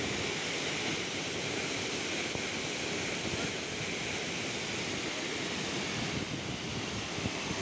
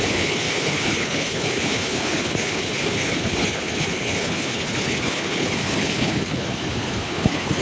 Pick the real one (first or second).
first